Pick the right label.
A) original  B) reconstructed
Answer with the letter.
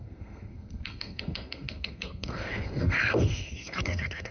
B